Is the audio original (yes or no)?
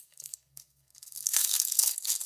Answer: no